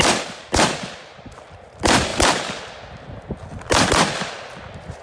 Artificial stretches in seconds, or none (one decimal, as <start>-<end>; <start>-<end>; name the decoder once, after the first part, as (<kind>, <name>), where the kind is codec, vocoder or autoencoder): none